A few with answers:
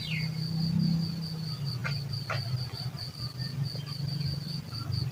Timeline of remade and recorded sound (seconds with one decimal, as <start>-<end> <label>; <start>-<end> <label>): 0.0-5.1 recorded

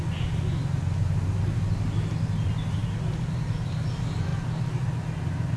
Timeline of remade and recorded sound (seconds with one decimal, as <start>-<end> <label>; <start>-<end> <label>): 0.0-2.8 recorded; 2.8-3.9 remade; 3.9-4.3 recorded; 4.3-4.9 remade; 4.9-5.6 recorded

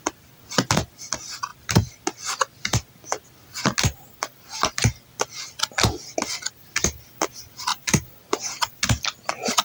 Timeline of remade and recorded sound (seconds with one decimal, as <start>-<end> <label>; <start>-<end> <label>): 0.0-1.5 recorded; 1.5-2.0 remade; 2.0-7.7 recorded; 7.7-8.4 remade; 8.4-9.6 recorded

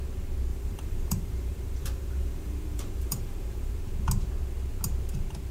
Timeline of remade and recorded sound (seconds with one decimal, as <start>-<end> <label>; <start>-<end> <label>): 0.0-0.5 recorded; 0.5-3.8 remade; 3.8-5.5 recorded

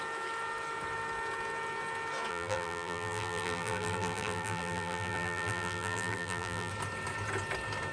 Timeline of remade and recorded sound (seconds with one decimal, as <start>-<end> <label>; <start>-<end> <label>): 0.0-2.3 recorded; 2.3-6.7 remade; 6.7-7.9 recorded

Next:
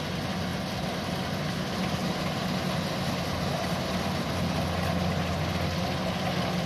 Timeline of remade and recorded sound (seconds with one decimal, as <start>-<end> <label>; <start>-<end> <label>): 0.0-6.7 recorded